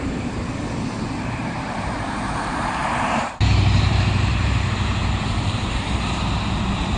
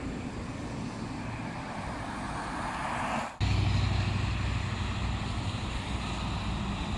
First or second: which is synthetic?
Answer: first